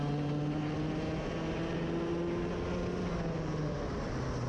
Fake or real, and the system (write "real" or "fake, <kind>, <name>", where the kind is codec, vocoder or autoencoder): real